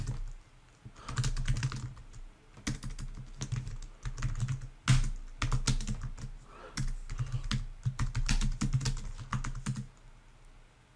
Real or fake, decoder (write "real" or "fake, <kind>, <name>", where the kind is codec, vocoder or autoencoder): real